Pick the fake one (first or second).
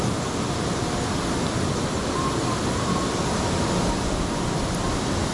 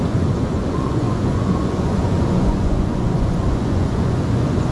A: second